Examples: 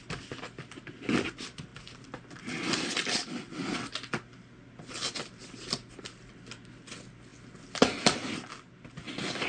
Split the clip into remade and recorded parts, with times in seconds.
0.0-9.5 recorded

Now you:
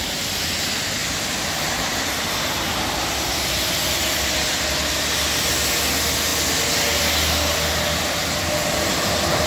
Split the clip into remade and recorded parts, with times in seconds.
0.0-1.0 recorded; 1.0-3.8 remade; 3.8-9.5 recorded